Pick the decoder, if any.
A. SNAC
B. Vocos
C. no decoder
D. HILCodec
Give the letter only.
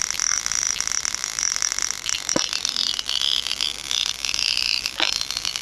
C